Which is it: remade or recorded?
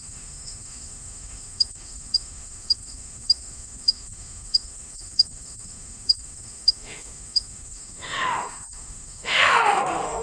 remade